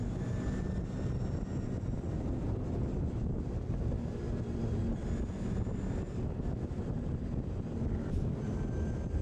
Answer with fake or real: real